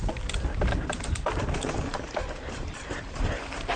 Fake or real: fake